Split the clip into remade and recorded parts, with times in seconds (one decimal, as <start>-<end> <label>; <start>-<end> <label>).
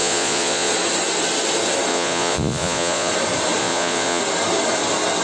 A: 0.0-0.7 remade; 0.7-1.9 recorded; 1.9-3.1 remade; 3.1-3.6 recorded; 3.6-4.2 remade; 4.2-5.2 recorded